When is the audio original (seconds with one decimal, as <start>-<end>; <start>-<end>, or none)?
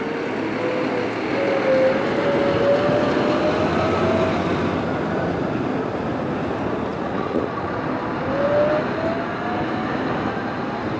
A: 0.0-6.9; 7.8-11.0